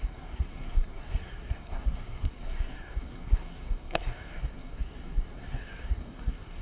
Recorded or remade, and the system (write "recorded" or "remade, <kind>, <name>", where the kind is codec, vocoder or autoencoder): remade, codec, SNAC